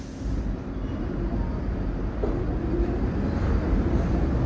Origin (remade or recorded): recorded